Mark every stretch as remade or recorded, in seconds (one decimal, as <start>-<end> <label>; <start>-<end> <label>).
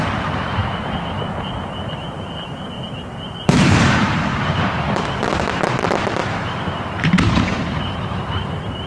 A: 0.0-0.6 remade; 0.6-3.6 recorded; 3.6-8.9 remade